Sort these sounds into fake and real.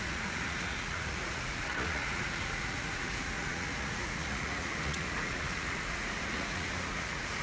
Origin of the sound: fake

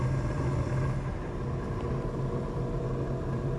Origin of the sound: real